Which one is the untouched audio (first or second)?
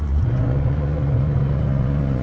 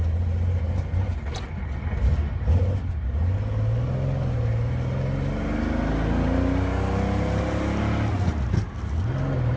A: second